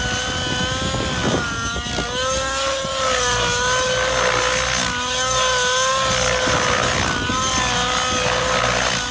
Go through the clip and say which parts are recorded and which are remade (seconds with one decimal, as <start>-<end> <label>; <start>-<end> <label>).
0.0-9.1 recorded